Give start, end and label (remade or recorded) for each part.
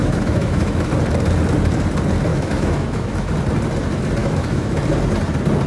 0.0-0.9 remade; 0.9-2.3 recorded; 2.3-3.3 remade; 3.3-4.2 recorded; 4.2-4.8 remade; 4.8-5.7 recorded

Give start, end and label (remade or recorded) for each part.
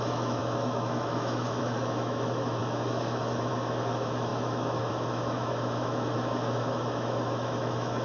0.0-8.0 remade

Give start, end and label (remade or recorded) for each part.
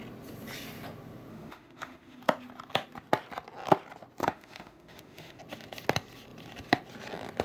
0.0-1.3 recorded; 1.3-2.2 remade; 2.2-4.2 recorded; 4.2-5.4 remade; 5.4-7.4 recorded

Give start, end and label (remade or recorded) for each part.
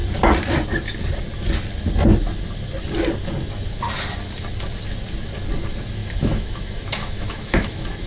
0.0-6.0 recorded; 6.0-8.1 remade